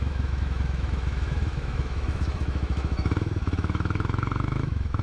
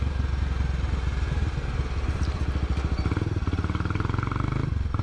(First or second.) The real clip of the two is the second